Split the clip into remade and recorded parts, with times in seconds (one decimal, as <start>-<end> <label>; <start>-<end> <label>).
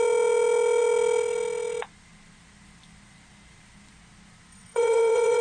0.0-4.5 recorded; 4.5-5.4 remade